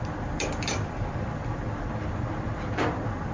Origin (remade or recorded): remade